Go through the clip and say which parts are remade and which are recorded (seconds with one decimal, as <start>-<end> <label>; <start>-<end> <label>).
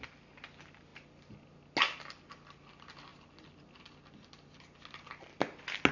0.0-5.9 recorded